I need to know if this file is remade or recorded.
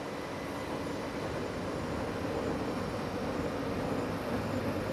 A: recorded